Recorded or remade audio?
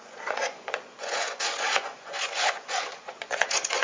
remade